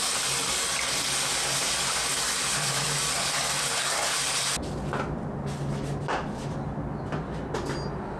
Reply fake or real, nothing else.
real